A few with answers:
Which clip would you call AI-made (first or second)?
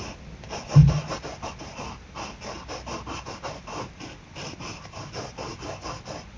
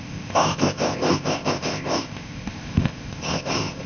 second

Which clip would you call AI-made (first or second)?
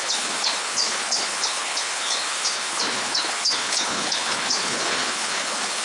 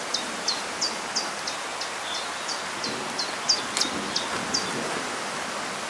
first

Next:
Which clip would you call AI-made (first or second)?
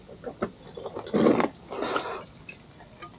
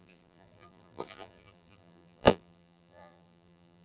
second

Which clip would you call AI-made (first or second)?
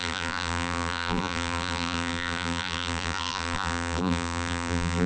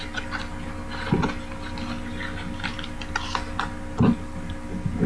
first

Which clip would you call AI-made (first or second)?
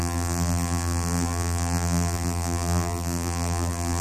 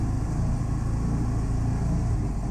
first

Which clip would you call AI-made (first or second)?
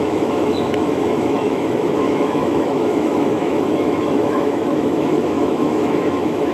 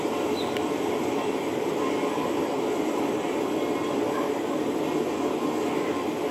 first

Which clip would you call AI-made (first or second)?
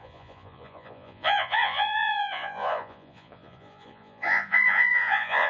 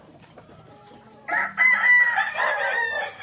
first